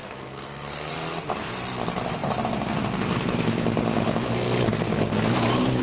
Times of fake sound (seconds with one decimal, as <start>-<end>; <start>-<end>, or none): 0.0-0.9